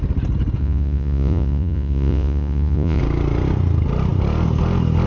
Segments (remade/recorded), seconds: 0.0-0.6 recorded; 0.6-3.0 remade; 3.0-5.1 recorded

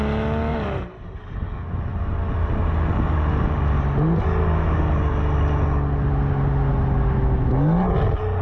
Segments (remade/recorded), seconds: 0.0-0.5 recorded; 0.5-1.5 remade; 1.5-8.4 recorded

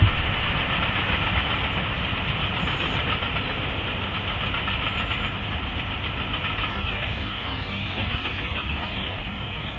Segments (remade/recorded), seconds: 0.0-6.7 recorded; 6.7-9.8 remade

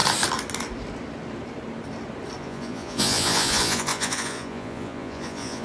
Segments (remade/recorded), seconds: 0.0-2.4 recorded; 2.4-5.6 remade